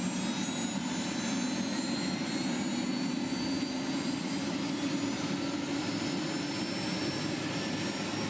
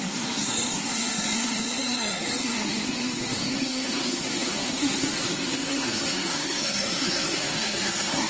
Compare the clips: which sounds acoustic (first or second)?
first